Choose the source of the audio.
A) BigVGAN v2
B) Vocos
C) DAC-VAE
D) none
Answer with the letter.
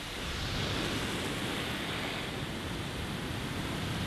D